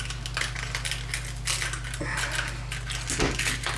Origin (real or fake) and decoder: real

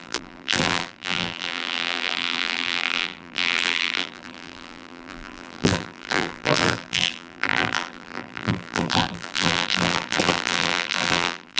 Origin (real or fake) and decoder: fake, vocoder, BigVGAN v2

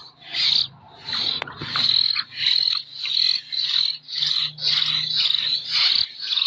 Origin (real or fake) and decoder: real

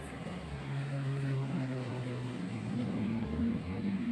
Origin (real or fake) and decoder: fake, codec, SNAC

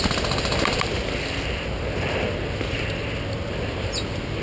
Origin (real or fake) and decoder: real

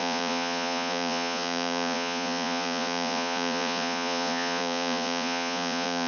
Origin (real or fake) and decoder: fake, vocoder, Vocos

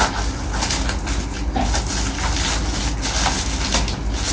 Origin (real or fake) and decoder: real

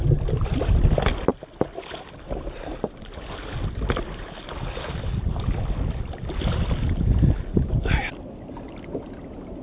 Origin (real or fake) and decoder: real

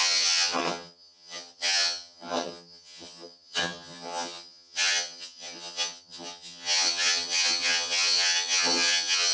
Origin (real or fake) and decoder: fake, vocoder, HiFi-GAN